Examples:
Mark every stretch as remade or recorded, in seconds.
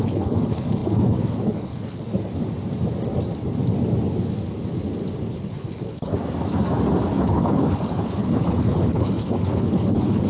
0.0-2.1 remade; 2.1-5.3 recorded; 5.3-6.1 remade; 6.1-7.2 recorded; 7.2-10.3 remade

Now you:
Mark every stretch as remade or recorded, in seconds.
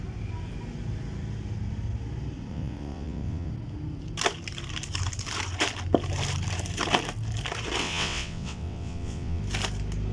0.0-2.5 recorded; 2.5-3.5 remade; 3.5-7.8 recorded; 7.8-9.4 remade; 9.4-10.1 recorded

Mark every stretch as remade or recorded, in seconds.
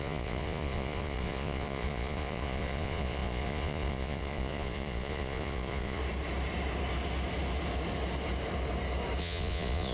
0.0-6.0 remade; 6.0-9.2 recorded; 9.2-9.9 remade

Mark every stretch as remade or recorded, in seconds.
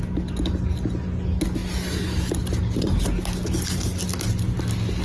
0.0-5.0 recorded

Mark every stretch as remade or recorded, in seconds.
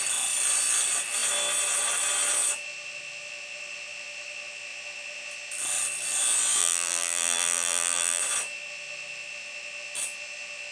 0.0-6.6 recorded; 6.6-8.2 remade; 8.2-10.7 recorded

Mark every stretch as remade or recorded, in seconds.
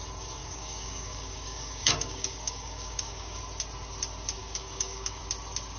0.0-0.4 recorded; 0.4-3.4 remade; 3.4-4.4 recorded; 4.4-5.2 remade; 5.2-5.8 recorded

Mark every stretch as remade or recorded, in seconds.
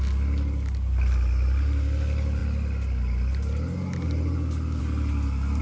0.0-5.6 recorded